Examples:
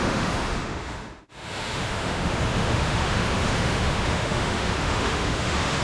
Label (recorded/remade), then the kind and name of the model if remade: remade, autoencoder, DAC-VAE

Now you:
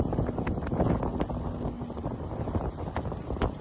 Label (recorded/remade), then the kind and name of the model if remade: recorded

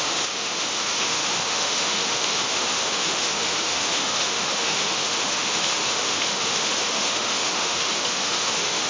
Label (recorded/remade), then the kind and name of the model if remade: remade, autoencoder, DAC-VAE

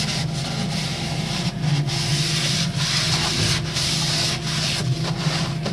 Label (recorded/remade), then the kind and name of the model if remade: recorded